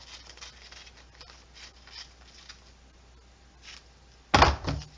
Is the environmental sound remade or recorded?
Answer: recorded